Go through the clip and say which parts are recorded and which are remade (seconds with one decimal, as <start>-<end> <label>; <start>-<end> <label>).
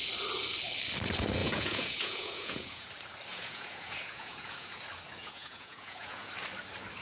0.0-1.4 recorded; 1.4-2.9 remade; 2.9-3.3 recorded; 3.3-4.8 remade; 4.8-5.2 recorded; 5.2-6.3 remade; 6.3-7.0 recorded